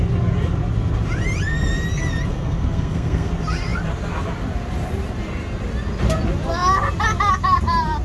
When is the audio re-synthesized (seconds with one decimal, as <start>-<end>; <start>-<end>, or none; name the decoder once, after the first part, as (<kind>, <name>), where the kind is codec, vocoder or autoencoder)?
2.3-3.3 (codec, SNAC)